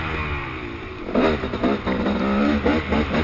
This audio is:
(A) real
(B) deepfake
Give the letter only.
A